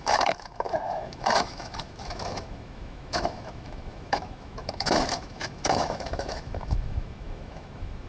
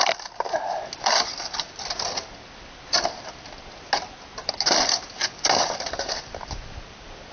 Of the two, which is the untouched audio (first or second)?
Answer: second